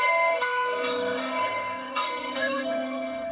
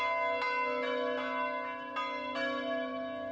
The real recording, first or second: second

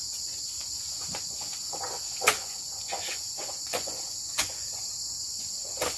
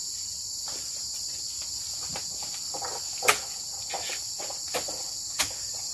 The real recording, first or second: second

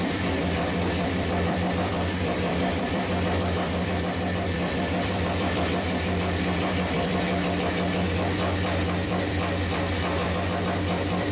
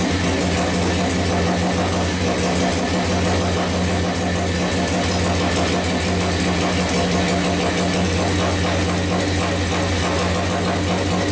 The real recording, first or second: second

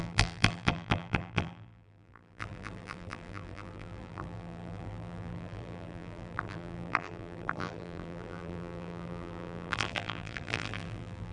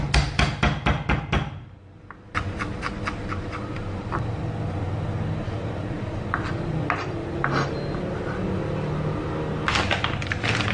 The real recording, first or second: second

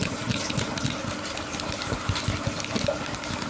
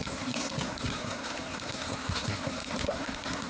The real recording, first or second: first